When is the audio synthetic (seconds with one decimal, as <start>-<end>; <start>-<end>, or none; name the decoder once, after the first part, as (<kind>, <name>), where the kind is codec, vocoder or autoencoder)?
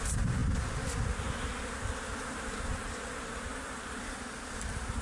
0.0-0.4 (vocoder, BigVGAN v2); 2.2-5.0